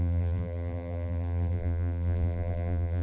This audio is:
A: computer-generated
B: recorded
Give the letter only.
A